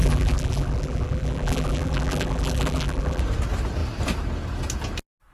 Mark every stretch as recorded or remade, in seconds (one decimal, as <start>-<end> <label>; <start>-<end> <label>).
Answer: 0.0-3.2 remade; 3.2-5.3 recorded